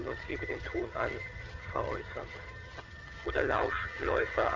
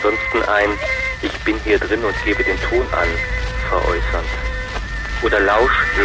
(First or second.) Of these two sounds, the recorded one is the second